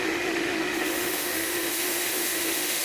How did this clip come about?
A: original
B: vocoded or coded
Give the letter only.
B